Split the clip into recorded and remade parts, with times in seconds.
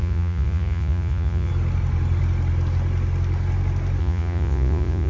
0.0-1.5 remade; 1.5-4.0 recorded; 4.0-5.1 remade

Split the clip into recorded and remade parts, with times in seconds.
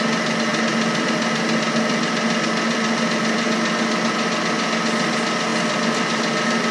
0.0-6.7 recorded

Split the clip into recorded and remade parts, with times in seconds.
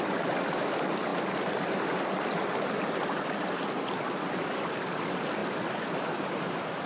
0.0-6.9 recorded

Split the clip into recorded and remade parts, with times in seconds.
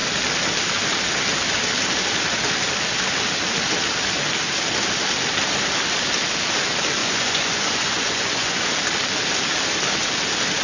0.0-7.0 recorded; 7.0-8.6 remade; 8.6-10.6 recorded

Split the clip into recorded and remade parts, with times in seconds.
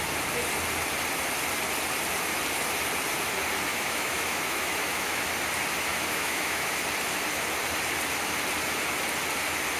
0.0-3.7 recorded; 3.7-5.2 remade; 5.2-5.9 recorded; 5.9-6.7 remade; 6.7-9.8 recorded